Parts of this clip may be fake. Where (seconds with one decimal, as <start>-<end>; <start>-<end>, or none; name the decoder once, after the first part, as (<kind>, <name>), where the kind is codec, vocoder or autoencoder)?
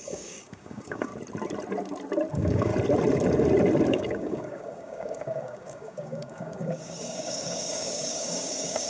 0.0-1.1 (codec, DAC); 2.3-2.7; 3.9-8.9